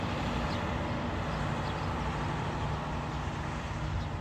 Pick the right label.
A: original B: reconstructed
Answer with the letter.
A